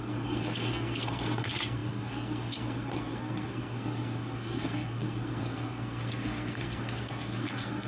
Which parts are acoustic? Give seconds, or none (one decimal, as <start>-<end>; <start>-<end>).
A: none